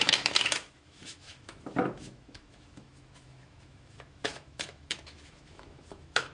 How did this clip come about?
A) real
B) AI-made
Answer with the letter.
B